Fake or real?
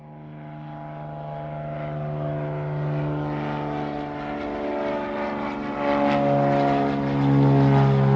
real